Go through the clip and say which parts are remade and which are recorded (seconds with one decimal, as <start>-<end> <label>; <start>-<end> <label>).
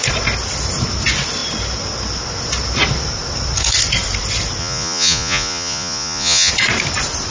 0.0-4.6 recorded; 4.6-6.5 remade; 6.5-7.3 recorded